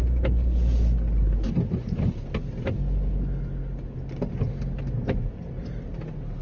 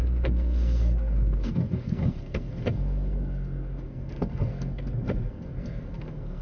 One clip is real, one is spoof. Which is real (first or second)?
first